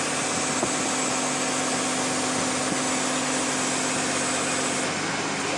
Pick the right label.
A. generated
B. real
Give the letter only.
B